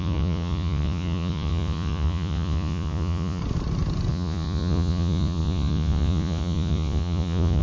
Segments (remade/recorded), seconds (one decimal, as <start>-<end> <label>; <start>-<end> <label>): 0.0-3.4 remade; 3.4-4.1 recorded; 4.1-7.6 remade